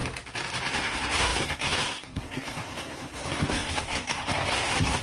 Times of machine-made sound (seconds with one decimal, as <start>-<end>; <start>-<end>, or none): 0.7-5.0